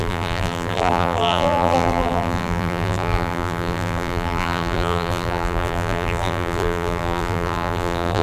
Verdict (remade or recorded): remade